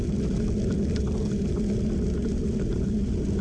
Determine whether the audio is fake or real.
real